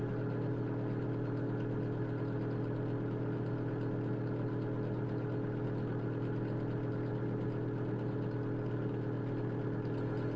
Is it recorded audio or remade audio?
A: recorded